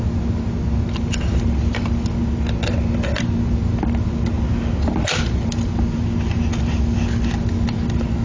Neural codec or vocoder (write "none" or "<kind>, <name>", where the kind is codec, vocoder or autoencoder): none